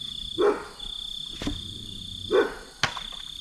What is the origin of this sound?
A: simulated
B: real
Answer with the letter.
B